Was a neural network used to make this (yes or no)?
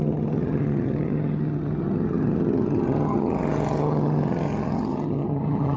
yes